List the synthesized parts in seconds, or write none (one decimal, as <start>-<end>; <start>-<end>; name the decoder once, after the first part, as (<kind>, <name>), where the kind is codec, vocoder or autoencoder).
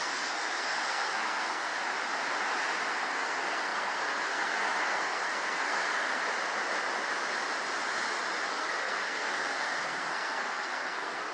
0.0-1.7 (codec, SNAC); 2.9-6.2; 8.5-11.3